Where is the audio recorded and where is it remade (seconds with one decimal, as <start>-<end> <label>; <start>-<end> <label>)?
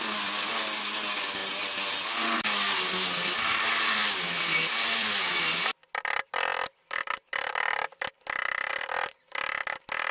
0.0-10.1 recorded